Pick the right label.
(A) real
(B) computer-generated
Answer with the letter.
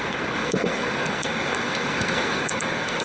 B